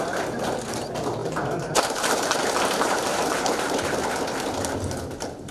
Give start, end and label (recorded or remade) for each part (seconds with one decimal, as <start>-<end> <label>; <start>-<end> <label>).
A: 0.0-1.2 recorded; 1.2-4.1 remade; 4.1-5.5 recorded